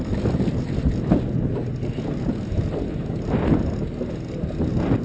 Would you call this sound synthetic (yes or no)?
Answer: no